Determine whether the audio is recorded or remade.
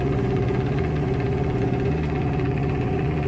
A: remade